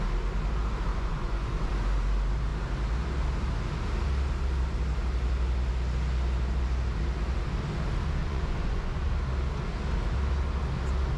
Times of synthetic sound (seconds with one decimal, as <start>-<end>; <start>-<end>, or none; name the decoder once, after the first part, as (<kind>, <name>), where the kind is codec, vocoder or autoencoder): 0.9-1.7 (vocoder, Vocos); 8.2-9.1